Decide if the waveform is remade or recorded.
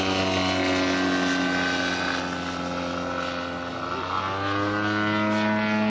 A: recorded